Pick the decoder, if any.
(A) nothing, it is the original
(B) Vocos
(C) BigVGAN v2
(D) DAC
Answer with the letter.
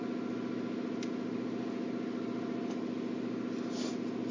A